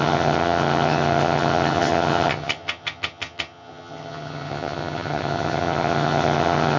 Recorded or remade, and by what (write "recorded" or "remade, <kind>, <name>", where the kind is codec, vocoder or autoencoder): remade, vocoder, HiFi-GAN